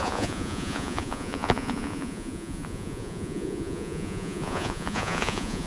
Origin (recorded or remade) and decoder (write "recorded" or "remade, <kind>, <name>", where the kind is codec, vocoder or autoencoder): remade, vocoder, Vocos